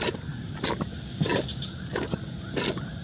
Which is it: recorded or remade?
recorded